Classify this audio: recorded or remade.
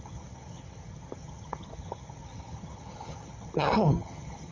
remade